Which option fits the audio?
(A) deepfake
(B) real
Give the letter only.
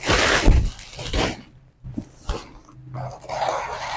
B